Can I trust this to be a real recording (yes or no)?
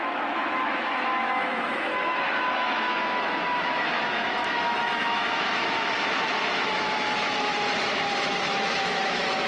no